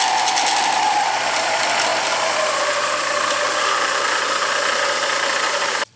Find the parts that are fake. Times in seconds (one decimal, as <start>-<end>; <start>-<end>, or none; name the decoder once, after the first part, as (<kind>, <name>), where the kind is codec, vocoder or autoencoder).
0.0-1.9 (vocoder, BigVGAN v2); 5.5-6.0